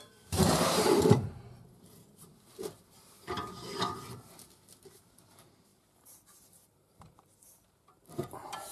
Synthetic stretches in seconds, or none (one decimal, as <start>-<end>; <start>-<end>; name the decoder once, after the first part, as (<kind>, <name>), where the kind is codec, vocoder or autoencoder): 0.0-2.3 (vocoder, BigVGAN v2); 5.0-8.7

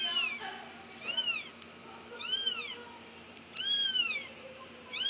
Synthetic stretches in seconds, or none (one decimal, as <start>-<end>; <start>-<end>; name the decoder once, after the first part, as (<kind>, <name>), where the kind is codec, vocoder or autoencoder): 2.7-5.1 (vocoder, BigVGAN v2)

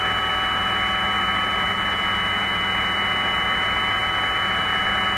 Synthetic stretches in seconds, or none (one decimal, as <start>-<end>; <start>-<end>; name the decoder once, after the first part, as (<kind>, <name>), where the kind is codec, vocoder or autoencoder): none